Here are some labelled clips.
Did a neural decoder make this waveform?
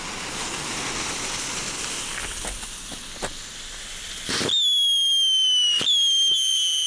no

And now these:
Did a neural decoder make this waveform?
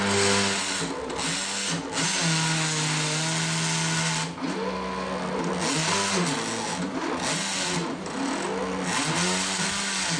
no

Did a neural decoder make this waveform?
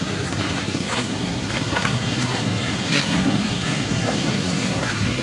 yes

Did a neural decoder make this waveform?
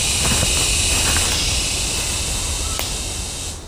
no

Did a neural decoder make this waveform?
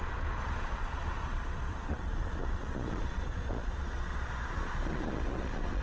yes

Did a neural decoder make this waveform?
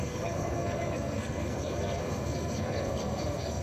yes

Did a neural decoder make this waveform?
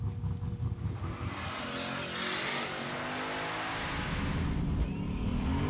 no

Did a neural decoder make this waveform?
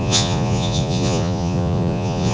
yes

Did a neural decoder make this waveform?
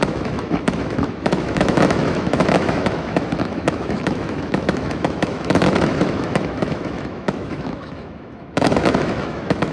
yes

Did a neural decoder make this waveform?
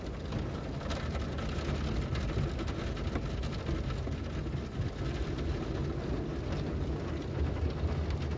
no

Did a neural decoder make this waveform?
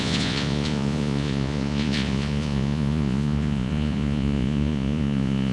yes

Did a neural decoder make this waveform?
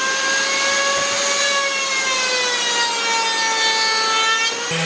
no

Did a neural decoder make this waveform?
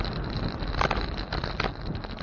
no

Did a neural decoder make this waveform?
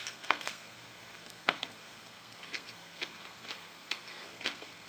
yes